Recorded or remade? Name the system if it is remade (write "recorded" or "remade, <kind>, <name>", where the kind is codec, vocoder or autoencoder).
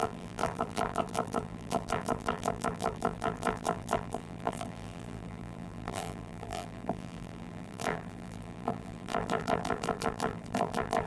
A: remade, vocoder, BigVGAN v2